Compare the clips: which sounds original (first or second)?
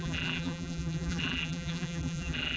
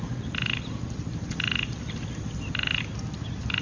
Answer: second